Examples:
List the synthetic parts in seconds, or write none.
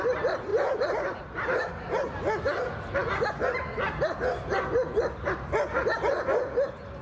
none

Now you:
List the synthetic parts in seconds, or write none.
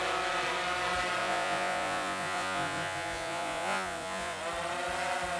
1.2-4.4 (vocoder, Vocos)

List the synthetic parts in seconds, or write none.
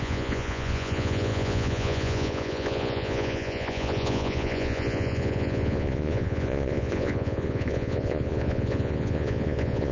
0.0-9.9 (vocoder, Vocos)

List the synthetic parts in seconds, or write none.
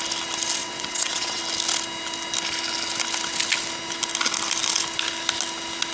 0.6-1.4 (vocoder, WaveNeXt)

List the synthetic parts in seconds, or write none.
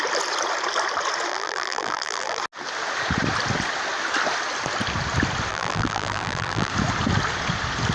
1.3-2.4 (vocoder, BigVGAN v2); 5.5-6.7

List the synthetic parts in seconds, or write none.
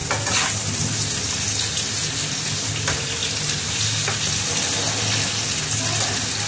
none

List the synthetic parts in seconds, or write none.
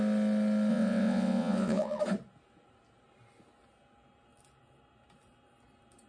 0.7-2.0 (vocoder, WaveNeXt)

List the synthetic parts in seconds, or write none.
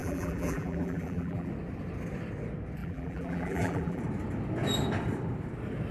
0.0-1.5 (vocoder, BigVGAN v2); 2.8-4.0